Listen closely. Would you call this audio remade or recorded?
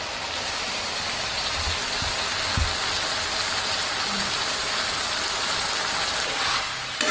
recorded